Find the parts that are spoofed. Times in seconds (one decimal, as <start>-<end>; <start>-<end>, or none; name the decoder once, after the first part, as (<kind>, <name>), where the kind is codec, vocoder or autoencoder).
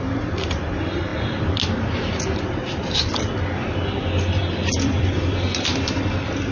1.1-3.3 (vocoder, BigVGAN v2); 4.4-5.5